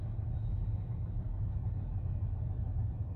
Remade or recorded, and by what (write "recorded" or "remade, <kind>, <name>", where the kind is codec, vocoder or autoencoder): recorded